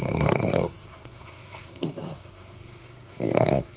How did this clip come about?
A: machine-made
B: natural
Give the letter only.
A